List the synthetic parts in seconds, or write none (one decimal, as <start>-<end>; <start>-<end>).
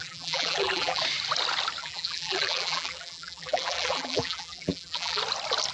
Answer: 0.0-1.0; 1.8-5.2